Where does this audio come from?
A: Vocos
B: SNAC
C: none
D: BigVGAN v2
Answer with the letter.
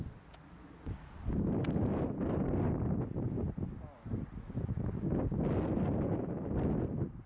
C